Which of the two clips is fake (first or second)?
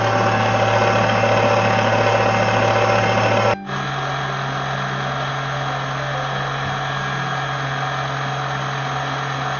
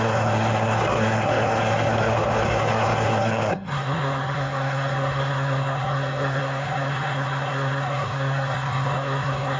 second